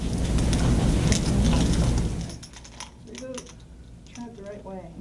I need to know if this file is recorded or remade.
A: recorded